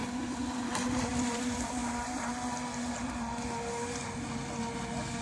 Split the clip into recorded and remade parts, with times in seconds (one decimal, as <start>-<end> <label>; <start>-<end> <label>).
0.0-1.8 remade; 1.8-5.2 recorded